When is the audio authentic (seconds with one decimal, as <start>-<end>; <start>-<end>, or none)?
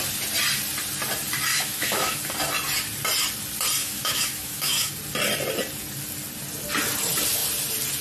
0.0-1.5; 2.2-3.8; 4.9-8.0